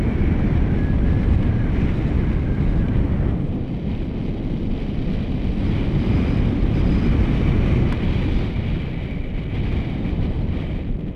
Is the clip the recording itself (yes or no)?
yes